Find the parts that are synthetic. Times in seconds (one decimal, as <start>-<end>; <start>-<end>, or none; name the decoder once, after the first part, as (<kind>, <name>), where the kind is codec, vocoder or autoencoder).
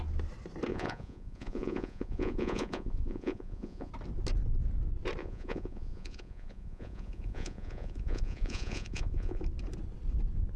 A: 0.7-3.9 (vocoder, Vocos); 5.2-9.4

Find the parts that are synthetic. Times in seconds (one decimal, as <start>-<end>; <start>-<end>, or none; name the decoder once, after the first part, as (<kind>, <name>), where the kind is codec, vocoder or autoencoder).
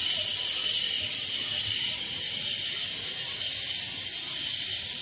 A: none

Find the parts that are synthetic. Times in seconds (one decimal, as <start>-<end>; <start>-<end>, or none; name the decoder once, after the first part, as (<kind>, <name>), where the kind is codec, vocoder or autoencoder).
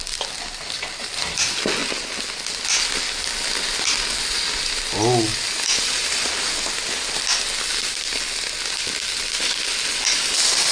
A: 6.0-6.8 (vocoder, BigVGAN v2)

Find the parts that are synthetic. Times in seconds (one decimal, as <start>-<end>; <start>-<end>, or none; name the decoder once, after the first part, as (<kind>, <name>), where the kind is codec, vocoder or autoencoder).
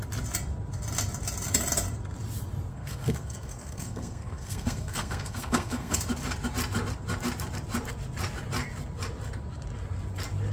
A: 2.7-6.0 (codec, SNAC)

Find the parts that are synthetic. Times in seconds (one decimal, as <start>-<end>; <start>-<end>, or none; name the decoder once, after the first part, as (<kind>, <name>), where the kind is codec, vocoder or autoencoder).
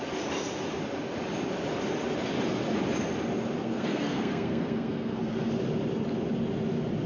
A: 3.6-5.5 (codec, SNAC)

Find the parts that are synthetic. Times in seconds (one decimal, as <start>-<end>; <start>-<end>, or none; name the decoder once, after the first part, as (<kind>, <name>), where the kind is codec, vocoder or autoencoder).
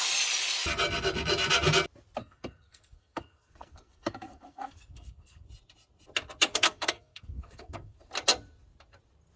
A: 2.2-5.5 (codec, SNAC); 6.5-8.1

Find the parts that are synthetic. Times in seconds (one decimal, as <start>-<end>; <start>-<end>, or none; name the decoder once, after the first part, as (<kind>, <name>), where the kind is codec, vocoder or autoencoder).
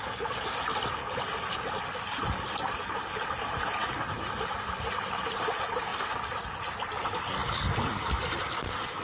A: none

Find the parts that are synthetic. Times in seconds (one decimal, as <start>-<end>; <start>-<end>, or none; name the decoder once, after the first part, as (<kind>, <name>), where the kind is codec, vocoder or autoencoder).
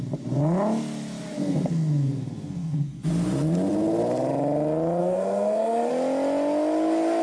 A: 1.4-3.1 (codec, SNAC); 5.0-5.9